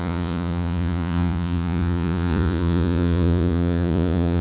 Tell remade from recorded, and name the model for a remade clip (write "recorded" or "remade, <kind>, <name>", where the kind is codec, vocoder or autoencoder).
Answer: remade, vocoder, Vocos